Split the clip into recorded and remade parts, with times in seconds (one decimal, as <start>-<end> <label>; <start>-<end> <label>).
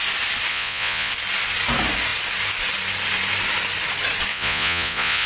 0.0-0.5 recorded; 0.5-1.1 remade; 1.1-4.3 recorded; 4.3-5.3 remade